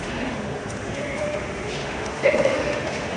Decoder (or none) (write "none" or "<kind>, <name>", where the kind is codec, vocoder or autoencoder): autoencoder, DAC-VAE